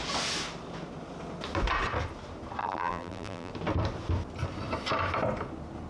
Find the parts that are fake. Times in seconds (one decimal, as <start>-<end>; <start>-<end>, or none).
2.6-3.5